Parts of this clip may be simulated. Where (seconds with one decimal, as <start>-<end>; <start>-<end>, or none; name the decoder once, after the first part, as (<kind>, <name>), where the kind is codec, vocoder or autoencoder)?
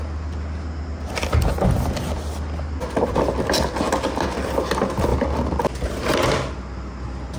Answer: none